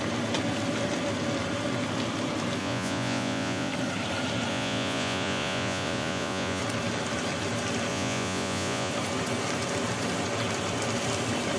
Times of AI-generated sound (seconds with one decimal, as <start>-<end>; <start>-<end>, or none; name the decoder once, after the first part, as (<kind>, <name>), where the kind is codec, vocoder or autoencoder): 2.6-3.7 (vocoder, Vocos); 4.5-6.6; 7.9-8.9